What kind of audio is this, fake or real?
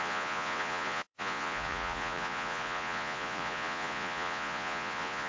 fake